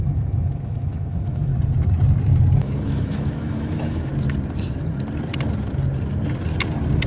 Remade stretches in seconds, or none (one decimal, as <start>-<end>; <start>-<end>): 0.0-1.5; 2.6-4.1